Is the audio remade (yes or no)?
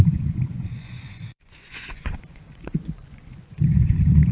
yes